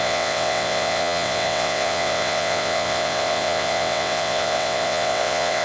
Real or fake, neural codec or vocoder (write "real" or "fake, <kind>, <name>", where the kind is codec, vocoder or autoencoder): fake, vocoder, WaveNeXt